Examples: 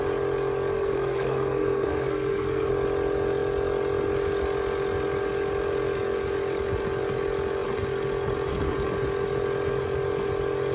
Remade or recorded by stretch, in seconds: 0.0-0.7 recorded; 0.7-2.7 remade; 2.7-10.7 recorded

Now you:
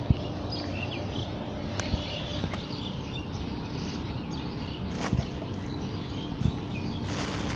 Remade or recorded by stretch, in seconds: 0.0-7.6 recorded